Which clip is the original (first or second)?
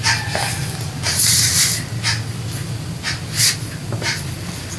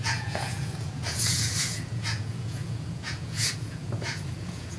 first